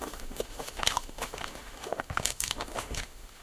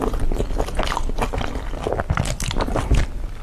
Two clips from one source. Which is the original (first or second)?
second